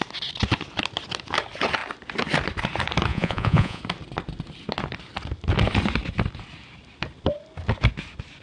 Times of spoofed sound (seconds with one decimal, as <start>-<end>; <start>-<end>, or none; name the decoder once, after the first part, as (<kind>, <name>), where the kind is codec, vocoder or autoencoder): 3.1-3.8 (vocoder, Vocos)